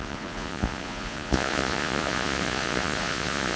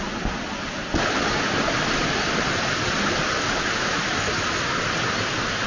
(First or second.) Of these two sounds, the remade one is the first